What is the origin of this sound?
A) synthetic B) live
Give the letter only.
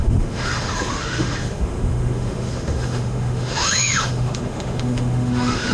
A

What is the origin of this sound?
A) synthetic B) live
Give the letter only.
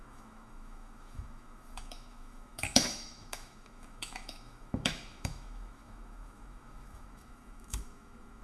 A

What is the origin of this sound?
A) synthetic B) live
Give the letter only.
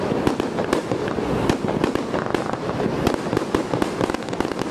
B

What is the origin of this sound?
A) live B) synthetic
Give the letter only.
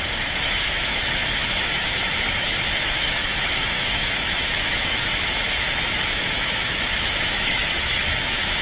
B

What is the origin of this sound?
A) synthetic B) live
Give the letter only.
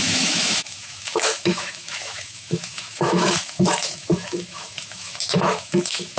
A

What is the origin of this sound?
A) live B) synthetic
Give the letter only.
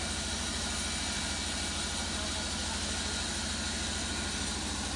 A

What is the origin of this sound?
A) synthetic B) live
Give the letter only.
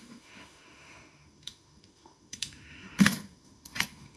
A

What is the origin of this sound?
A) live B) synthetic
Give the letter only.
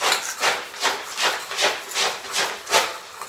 A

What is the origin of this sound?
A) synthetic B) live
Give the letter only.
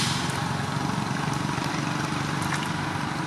B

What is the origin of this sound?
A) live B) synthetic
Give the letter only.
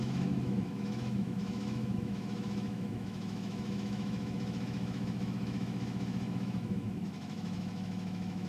B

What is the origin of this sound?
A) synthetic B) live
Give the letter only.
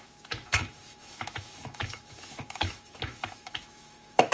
A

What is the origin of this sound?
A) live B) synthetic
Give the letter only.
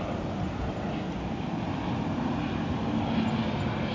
A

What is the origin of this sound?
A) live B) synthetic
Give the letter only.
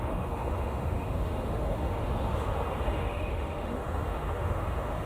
B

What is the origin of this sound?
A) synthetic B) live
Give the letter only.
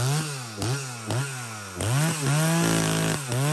B